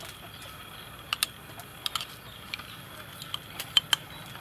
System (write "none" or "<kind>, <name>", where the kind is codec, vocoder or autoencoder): none